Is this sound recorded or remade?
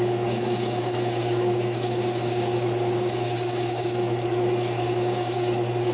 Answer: remade